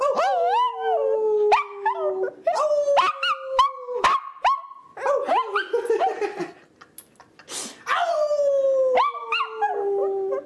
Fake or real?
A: real